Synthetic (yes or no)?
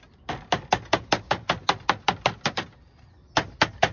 no